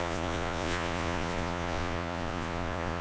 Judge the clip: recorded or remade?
remade